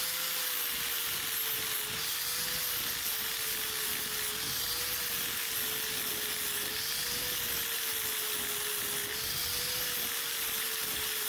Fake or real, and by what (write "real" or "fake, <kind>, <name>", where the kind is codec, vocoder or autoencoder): real